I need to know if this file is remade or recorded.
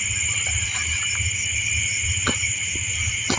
recorded